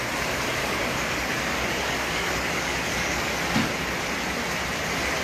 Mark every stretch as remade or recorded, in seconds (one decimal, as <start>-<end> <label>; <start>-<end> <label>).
0.0-0.6 recorded; 0.6-3.7 remade; 3.7-5.2 recorded